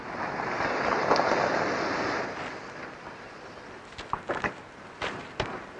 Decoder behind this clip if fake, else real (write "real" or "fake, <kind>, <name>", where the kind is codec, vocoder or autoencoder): real